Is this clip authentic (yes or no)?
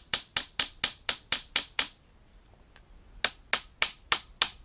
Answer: yes